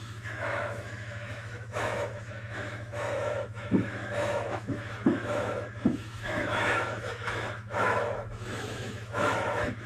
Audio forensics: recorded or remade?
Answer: remade